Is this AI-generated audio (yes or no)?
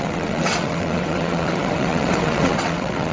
yes